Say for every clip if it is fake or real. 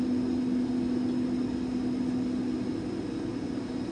real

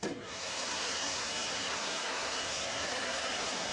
fake